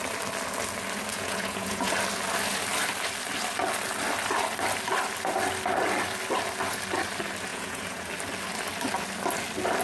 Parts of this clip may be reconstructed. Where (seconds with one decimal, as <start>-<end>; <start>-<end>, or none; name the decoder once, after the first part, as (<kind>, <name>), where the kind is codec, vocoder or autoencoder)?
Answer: 1.1-1.9 (vocoder, Vocos); 7.5-8.1

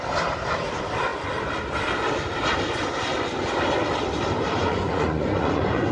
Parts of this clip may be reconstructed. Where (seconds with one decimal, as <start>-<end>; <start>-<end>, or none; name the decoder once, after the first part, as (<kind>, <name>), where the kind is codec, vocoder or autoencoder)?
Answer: 4.6-5.9 (vocoder, Vocos)

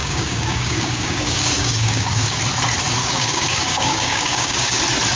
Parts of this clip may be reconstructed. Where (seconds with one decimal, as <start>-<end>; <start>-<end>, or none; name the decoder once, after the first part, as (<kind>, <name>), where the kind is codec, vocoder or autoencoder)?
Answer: 0.0-2.4 (codec, DAC); 3.0-4.8

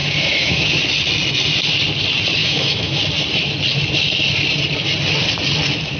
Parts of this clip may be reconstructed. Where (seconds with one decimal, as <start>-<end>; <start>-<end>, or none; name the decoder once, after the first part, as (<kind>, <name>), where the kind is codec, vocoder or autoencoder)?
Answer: 0.0-0.8 (autoencoder, DAC-VAE); 2.4-3.0

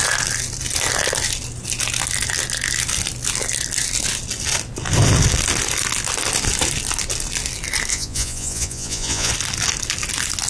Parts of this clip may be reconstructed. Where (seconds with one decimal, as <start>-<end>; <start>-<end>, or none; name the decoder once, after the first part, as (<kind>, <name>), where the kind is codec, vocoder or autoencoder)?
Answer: 7.9-9.3 (vocoder, Vocos)

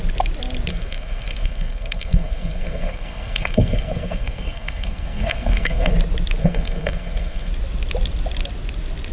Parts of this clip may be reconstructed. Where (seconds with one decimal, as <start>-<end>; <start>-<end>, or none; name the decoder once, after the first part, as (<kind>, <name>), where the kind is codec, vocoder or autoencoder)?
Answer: 0.7-5.9 (codec, SNAC); 6.4-7.5